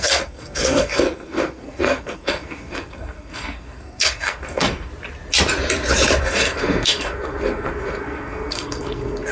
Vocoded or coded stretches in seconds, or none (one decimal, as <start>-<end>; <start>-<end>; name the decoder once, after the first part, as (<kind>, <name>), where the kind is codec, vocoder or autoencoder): 0.0-4.9 (codec, SNAC); 6.2-9.3